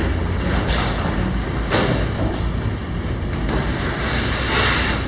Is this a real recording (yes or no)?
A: yes